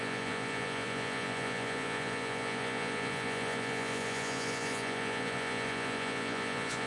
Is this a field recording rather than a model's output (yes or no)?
no